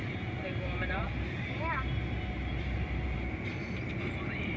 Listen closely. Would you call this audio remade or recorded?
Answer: remade